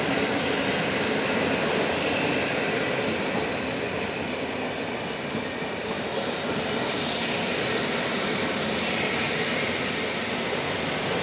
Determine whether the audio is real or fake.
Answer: real